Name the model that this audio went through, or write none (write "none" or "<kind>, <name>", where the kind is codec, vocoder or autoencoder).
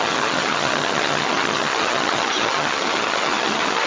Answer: vocoder, HiFi-GAN